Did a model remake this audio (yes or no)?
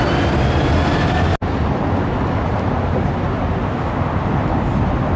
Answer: no